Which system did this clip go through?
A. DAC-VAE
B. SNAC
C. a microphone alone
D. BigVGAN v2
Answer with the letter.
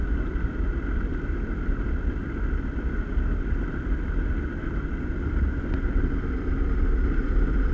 C